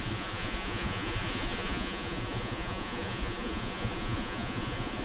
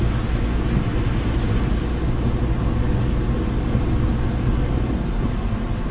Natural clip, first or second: second